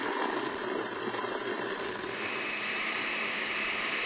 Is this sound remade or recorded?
remade